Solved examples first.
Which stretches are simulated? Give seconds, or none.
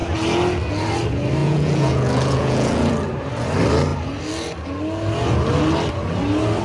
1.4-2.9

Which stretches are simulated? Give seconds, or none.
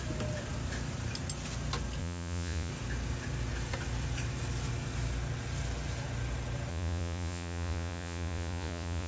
2.0-2.7; 6.7-9.1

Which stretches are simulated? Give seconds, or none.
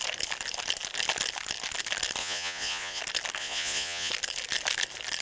2.2-3.0; 3.4-4.1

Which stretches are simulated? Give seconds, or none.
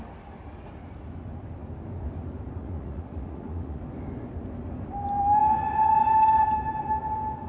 2.6-3.8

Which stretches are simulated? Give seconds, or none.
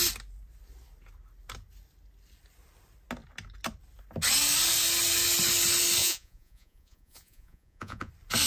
6.0-8.1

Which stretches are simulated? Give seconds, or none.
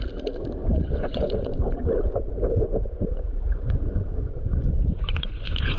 0.6-2.3; 2.9-5.8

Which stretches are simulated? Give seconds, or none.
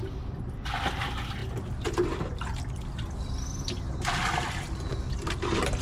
none